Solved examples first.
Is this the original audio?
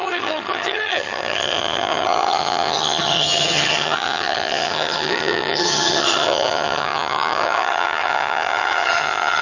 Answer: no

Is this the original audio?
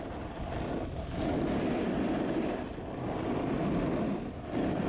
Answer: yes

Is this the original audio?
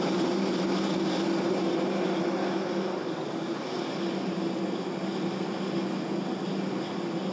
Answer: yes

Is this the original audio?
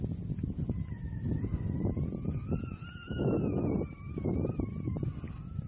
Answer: yes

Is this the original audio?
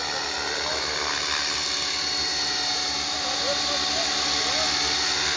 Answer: yes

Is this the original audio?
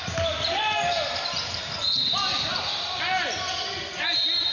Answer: yes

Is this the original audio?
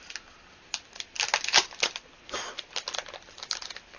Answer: yes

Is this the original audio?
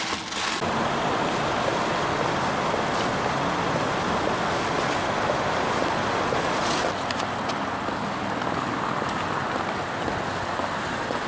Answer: yes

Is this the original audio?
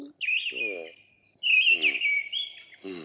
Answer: yes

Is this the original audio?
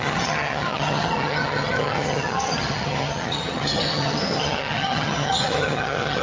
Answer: no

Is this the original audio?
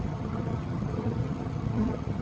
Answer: no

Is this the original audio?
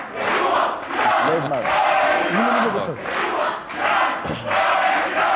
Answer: yes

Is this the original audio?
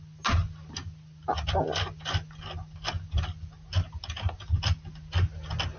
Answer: yes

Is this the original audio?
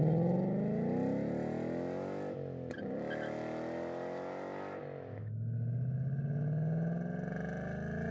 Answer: yes